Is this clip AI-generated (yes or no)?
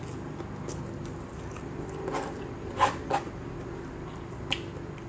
no